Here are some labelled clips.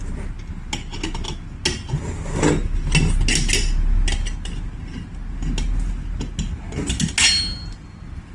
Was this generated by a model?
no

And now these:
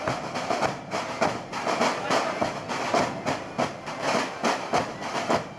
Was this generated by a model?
no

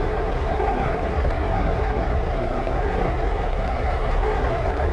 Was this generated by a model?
yes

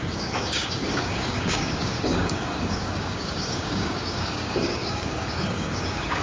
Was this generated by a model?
yes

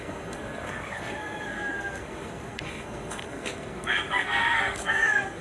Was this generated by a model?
yes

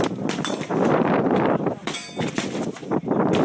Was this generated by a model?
yes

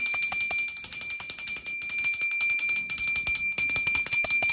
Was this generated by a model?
no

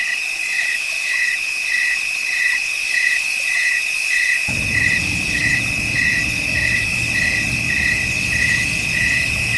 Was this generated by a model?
yes